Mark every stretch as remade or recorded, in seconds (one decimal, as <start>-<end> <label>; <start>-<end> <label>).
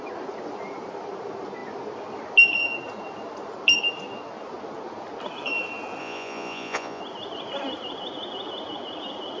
0.0-6.0 recorded; 6.0-7.0 remade; 7.0-9.4 recorded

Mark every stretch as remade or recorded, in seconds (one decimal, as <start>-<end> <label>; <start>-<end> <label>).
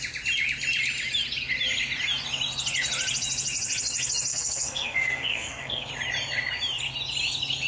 0.0-4.3 recorded; 4.3-5.9 remade; 5.9-7.7 recorded